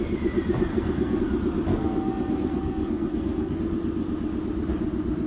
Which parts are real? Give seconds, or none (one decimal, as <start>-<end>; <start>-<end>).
0.0-0.7; 1.2-1.7; 3.6-5.3